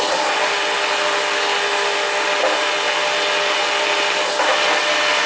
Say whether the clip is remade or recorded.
recorded